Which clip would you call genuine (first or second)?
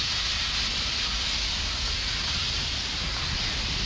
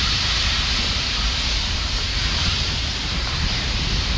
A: first